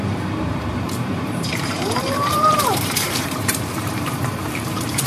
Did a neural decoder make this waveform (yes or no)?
yes